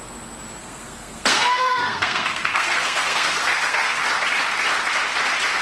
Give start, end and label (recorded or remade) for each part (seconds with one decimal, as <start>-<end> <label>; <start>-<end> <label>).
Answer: 0.0-0.6 recorded; 0.6-4.0 remade; 4.0-5.6 recorded